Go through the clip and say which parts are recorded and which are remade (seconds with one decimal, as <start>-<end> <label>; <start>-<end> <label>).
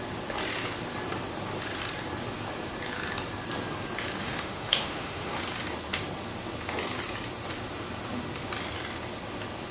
0.0-4.2 recorded; 4.2-5.4 remade; 5.4-9.7 recorded